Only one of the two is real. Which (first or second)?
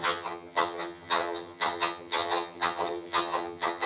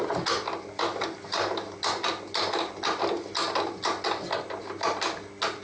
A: second